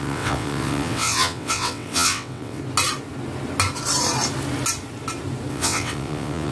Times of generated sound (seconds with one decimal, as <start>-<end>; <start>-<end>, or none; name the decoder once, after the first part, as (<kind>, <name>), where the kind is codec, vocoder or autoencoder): 0.0-2.6 (vocoder, WaveNeXt); 5.5-6.5